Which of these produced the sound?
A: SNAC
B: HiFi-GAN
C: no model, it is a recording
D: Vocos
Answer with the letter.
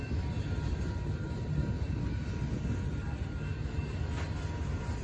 C